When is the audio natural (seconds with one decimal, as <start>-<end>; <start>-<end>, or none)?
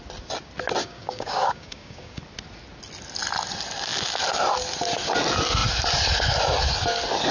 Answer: 0.0-0.8; 2.2-7.3